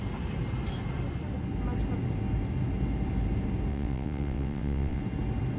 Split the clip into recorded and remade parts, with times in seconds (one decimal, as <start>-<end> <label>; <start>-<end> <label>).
0.0-3.7 recorded; 3.7-5.0 remade; 5.0-5.6 recorded